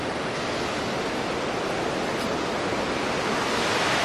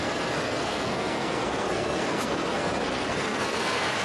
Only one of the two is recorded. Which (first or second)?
first